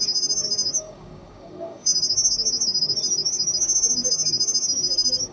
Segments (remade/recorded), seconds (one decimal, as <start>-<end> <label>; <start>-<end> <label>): 0.0-5.3 remade